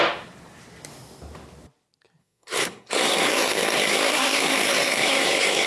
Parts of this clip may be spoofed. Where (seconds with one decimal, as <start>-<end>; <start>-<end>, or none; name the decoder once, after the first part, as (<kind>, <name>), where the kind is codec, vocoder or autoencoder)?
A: 2.2-5.7 (codec, SNAC)